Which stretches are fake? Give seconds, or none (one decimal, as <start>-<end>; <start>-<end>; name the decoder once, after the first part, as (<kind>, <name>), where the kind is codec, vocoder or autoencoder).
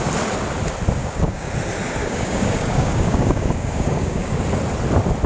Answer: 1.0-1.5 (codec, DAC); 2.0-4.4